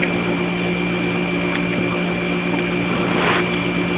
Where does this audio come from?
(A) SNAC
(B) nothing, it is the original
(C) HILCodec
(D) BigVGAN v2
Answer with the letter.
B